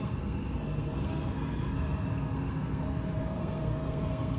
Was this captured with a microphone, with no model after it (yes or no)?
no